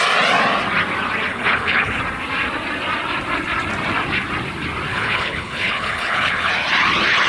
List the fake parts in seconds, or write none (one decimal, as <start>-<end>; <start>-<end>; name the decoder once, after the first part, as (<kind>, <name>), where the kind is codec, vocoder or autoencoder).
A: 1.3-2.0 (codec, HILCodec); 4.9-6.5